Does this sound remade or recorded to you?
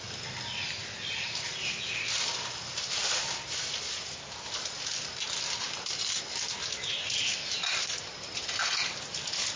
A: recorded